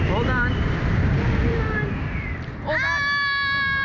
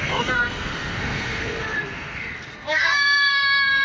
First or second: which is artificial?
second